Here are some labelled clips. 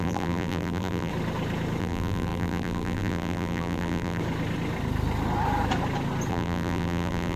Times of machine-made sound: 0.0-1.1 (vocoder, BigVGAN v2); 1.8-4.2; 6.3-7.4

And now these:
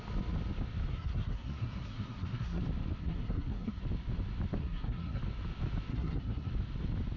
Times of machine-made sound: 0.9-2.6 (codec, SNAC); 3.0-3.8; 4.6-5.2; 5.9-6.5

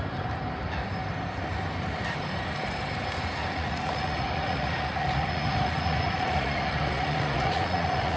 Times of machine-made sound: 3.5-8.2 (vocoder, Vocos)

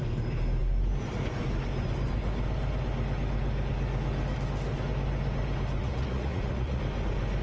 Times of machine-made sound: 5.8-6.8 (vocoder, Vocos)

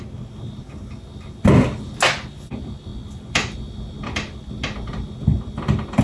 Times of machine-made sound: none

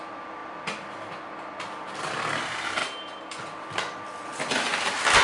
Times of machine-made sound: none

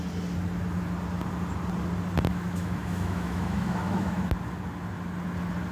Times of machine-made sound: 2.3-4.3 (autoencoder, DAC-VAE)